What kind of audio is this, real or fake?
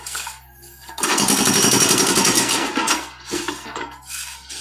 fake